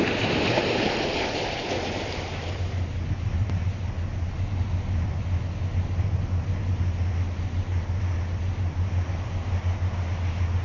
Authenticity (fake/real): real